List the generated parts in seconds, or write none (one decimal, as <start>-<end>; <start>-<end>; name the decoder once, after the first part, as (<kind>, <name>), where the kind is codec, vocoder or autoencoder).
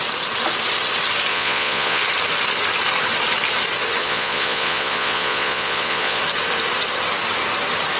1.3-2.0 (vocoder, Vocos); 4.0-6.2